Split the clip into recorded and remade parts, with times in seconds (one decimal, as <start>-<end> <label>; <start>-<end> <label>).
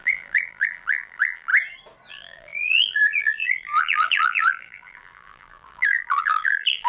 0.0-1.5 remade; 1.5-2.1 recorded; 2.1-6.9 remade